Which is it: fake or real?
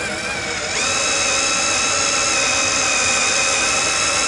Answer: real